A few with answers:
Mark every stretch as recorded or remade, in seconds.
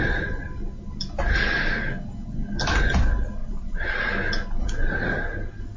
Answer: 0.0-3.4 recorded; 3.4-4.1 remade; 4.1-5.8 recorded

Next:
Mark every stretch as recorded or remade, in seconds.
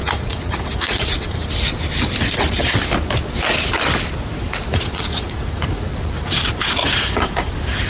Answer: 0.0-1.5 remade; 1.5-4.7 recorded; 4.7-5.9 remade; 5.9-6.8 recorded; 6.8-7.5 remade; 7.5-7.9 recorded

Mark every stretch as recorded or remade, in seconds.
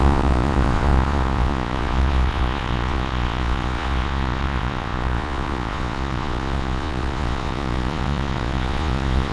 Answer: 0.0-9.3 remade